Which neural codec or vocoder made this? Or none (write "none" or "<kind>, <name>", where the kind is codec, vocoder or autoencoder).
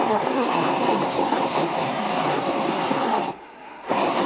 codec, SNAC